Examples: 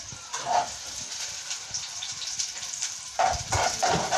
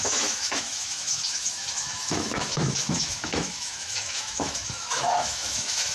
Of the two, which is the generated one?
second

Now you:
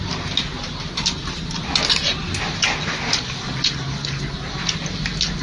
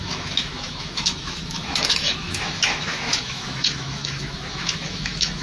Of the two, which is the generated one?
second